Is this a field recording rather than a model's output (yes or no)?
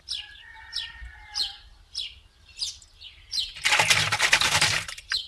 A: yes